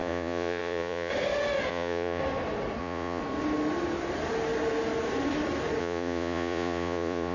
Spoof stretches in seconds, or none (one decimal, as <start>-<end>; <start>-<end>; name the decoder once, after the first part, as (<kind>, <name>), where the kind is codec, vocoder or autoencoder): 0.0-1.1 (vocoder, Vocos); 1.7-2.2; 2.8-3.2; 5.8-7.3